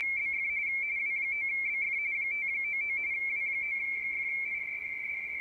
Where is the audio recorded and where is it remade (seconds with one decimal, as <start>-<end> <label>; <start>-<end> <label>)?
0.0-3.2 remade; 3.2-4.8 recorded; 4.8-5.4 remade